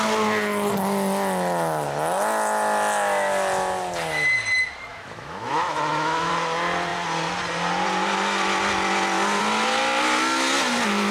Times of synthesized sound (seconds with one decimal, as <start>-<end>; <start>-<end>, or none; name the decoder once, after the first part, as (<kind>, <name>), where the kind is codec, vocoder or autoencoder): 4.9-6.3 (autoencoder, DAC-VAE)